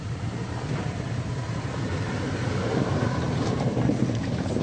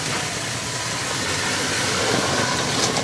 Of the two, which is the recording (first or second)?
second